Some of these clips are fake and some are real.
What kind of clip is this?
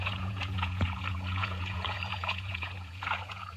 fake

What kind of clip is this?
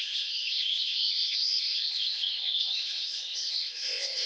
fake